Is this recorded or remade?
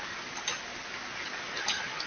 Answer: recorded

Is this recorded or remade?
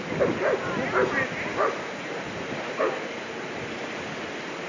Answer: recorded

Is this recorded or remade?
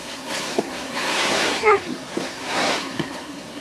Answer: remade